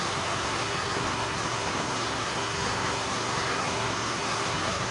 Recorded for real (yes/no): no